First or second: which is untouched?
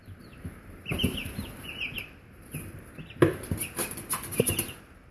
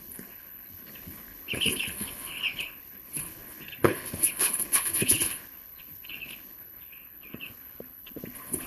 first